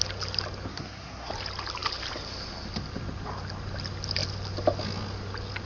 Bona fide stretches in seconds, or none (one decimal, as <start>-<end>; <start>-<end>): 0.0-0.7; 1.3-5.7